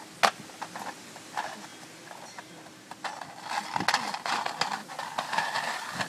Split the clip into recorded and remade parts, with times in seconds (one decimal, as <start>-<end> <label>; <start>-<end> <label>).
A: 0.0-6.1 recorded